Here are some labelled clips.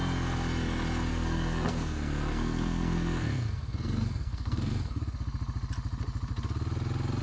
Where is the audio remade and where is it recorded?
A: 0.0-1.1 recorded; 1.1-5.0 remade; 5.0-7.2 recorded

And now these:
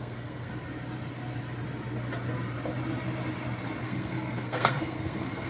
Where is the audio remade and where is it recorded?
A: 0.0-0.5 remade; 0.5-3.8 recorded; 3.8-5.5 remade

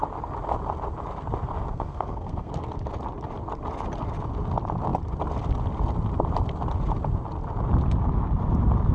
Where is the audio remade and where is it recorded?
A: 0.0-1.7 recorded; 1.7-2.5 remade; 2.5-8.9 recorded

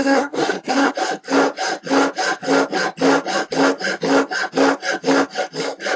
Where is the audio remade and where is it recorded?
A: 0.0-0.9 remade; 0.9-6.0 recorded

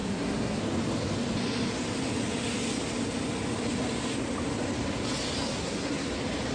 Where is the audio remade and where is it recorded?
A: 0.0-0.6 remade; 0.6-5.5 recorded; 5.5-6.1 remade; 6.1-6.5 recorded

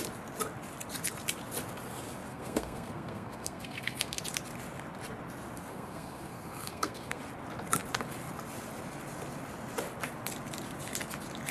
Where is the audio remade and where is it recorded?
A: 0.0-2.3 recorded; 2.3-4.2 remade; 4.2-5.7 recorded; 5.7-7.2 remade; 7.2-11.5 recorded